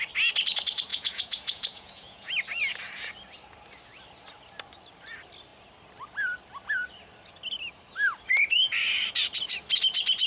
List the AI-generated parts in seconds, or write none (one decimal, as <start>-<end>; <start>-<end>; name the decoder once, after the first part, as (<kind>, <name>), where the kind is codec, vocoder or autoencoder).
0.9-2.3 (vocoder, Vocos)